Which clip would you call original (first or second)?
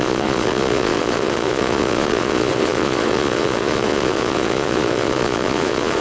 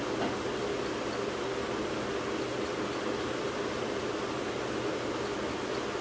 second